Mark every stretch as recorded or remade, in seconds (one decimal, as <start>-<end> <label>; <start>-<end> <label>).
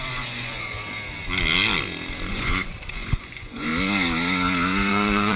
0.0-0.8 remade; 0.8-2.3 recorded; 2.3-3.7 remade; 3.7-4.9 recorded; 4.9-5.4 remade